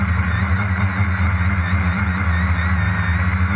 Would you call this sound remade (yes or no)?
no